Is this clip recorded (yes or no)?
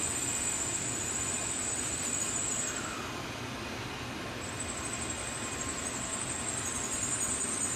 yes